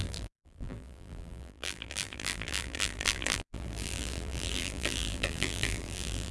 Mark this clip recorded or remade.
remade